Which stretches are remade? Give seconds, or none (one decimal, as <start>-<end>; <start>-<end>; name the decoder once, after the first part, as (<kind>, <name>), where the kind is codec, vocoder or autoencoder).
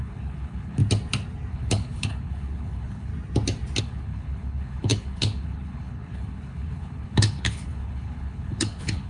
0.0-0.8 (codec, HILCodec); 1.5-3.1; 3.8-9.1